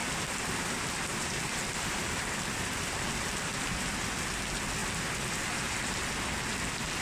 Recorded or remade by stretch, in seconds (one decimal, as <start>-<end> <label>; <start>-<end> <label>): 0.0-4.0 remade; 4.0-4.8 recorded; 4.8-5.7 remade; 5.7-7.0 recorded